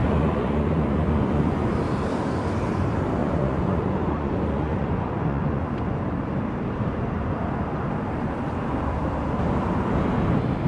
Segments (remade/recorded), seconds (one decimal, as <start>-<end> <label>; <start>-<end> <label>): 0.0-1.7 remade; 1.7-3.2 recorded; 3.2-6.0 remade; 6.0-10.7 recorded